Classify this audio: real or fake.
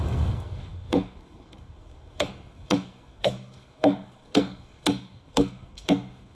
fake